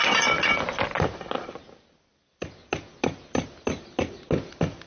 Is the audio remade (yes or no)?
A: no